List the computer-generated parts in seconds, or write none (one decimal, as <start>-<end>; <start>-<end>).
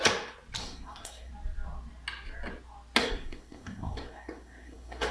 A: 0.6-1.3; 3.0-5.1